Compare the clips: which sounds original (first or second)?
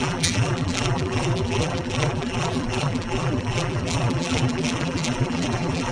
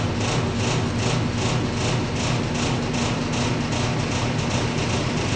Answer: second